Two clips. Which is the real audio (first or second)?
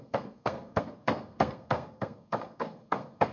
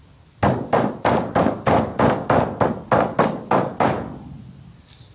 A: second